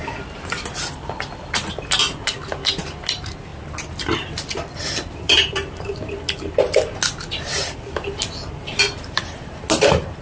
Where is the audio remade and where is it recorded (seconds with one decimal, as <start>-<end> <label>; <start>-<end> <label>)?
0.0-10.2 recorded